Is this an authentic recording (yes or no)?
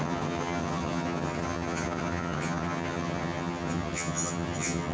no